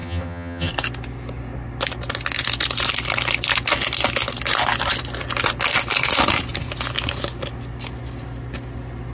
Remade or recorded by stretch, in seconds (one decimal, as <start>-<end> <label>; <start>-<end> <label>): 0.0-0.7 remade; 0.7-9.1 recorded